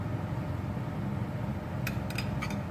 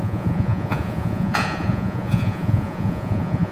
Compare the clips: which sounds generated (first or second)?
second